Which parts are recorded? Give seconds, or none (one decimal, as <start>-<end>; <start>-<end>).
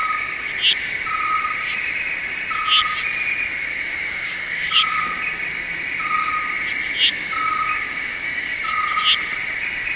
0.5-3.7; 5.1-7.1; 8.6-10.0